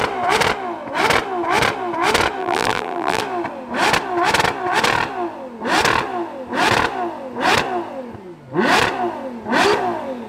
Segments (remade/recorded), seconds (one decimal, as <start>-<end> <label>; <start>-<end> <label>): 0.0-2.4 recorded; 2.4-3.2 remade; 3.2-10.3 recorded